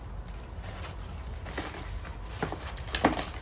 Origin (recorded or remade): recorded